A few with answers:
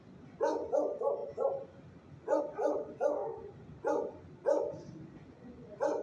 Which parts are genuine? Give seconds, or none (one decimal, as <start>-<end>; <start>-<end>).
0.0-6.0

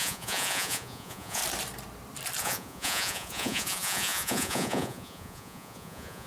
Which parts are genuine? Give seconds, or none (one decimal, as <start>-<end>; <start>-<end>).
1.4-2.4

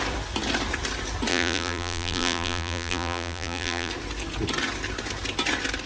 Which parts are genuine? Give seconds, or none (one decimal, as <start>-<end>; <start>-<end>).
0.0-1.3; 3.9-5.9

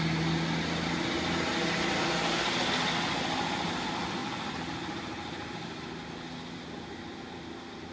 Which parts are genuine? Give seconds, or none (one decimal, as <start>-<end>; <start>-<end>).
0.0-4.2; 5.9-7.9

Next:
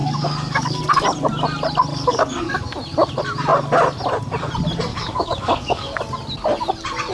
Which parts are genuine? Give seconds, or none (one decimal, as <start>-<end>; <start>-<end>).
0.8-1.9; 2.5-4.9; 6.0-7.1

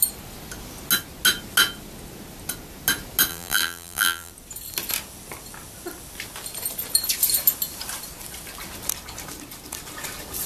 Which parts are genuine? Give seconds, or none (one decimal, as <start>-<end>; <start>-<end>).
0.0-3.3; 4.3-10.5

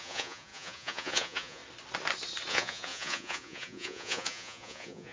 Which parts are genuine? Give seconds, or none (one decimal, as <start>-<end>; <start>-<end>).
1.6-2.5